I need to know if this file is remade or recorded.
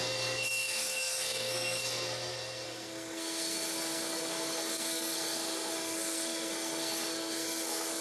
remade